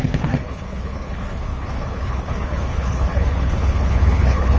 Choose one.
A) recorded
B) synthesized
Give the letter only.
B